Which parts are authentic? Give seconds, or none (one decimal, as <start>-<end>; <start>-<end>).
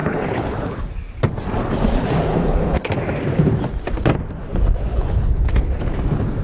0.8-2.3; 3.0-4.9; 5.7-6.4